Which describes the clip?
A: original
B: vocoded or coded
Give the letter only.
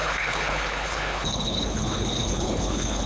B